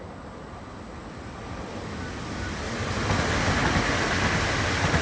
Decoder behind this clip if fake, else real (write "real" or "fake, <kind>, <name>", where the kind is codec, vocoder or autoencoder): real